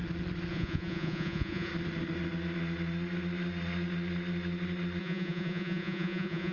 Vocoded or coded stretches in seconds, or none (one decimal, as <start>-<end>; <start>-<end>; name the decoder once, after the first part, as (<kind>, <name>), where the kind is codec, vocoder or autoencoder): 0.5-1.7 (vocoder, Vocos); 5.0-6.5